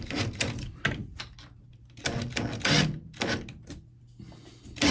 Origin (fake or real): real